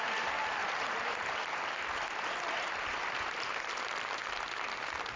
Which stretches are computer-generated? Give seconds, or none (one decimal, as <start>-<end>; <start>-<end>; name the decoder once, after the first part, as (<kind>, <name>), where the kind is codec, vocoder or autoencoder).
0.6-3.7 (vocoder, BigVGAN v2)